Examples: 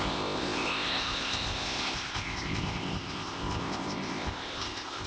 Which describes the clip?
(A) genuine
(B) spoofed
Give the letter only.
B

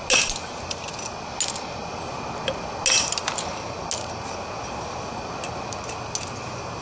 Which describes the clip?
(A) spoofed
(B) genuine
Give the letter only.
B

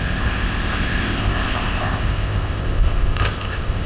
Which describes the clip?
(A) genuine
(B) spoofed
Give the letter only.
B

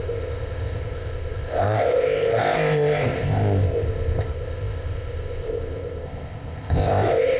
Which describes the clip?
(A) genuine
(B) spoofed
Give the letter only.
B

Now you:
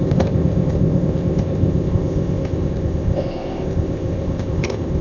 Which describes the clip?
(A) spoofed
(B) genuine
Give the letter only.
A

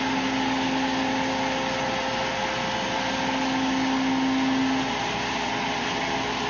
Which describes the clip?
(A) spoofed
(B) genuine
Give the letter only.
B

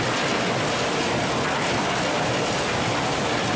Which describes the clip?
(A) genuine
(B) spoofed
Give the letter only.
A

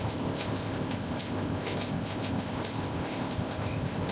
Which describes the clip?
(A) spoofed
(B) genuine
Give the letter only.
A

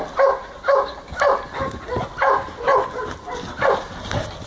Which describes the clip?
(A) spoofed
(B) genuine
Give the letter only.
B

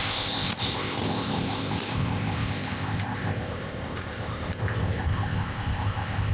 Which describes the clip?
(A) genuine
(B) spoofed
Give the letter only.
B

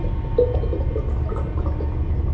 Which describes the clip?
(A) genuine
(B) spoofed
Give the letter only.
A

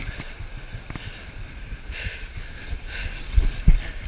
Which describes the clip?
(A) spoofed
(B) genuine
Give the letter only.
B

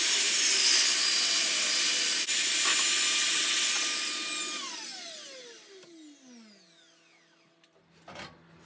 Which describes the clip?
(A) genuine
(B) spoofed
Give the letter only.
A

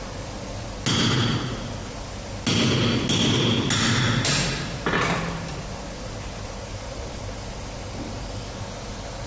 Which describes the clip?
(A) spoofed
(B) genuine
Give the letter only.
B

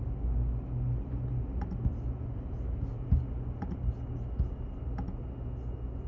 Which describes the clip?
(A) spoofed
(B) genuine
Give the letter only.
B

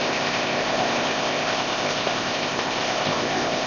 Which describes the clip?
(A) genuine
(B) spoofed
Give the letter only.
B